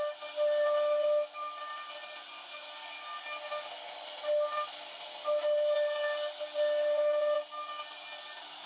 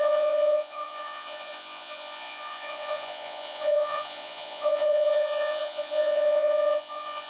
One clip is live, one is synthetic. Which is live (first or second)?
first